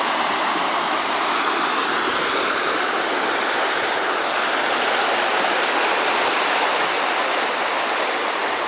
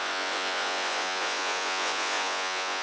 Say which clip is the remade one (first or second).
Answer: second